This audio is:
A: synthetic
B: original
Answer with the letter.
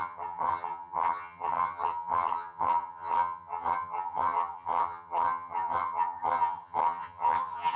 A